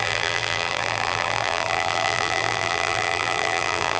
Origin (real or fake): fake